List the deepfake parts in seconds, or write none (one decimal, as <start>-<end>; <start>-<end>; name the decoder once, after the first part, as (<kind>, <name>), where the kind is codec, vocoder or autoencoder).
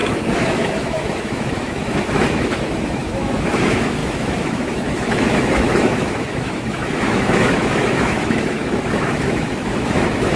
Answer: 0.0-10.4 (autoencoder, DAC-VAE)